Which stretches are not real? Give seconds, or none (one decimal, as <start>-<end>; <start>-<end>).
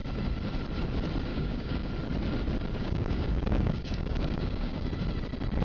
1.3-1.9; 2.8-4.9